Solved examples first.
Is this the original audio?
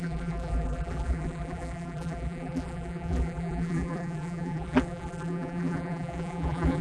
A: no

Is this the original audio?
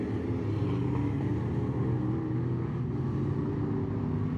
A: yes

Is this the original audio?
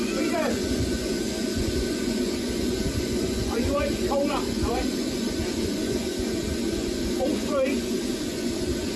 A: no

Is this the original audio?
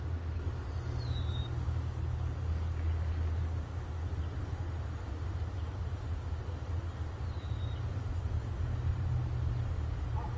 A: yes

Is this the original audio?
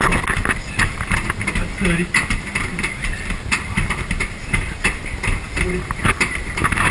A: yes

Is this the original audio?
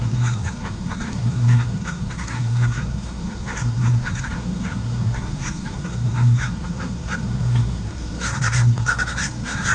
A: no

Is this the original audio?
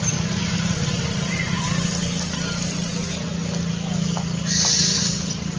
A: yes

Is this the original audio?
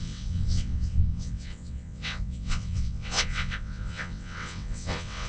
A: no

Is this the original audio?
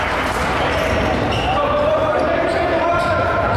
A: no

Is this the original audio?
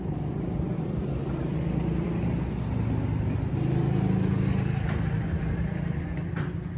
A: yes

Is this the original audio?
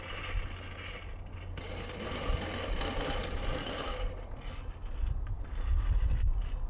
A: yes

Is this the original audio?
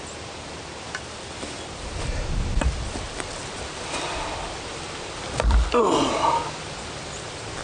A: yes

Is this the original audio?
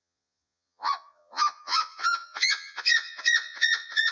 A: no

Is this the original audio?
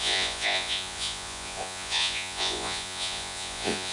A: no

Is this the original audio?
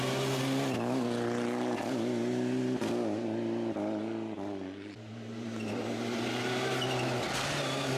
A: yes